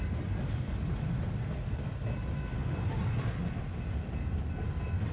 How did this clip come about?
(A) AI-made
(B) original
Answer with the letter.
B